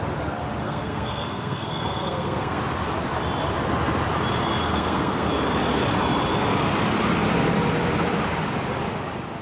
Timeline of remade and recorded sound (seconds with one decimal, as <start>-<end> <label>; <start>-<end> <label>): 0.0-0.6 recorded; 0.6-2.6 remade; 2.6-4.7 recorded; 4.7-5.3 remade; 5.3-9.4 recorded